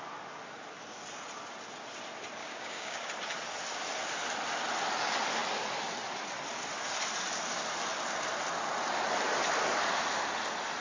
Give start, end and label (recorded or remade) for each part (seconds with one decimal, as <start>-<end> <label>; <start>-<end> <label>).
0.0-2.4 recorded; 2.4-3.1 remade; 3.1-10.8 recorded